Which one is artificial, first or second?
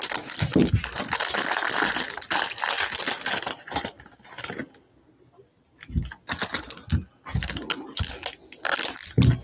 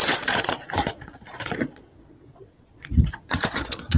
second